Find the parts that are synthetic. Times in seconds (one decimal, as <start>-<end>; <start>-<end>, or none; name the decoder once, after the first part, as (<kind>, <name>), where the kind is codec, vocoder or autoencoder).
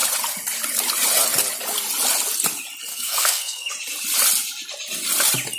2.9-3.7 (codec, SNAC)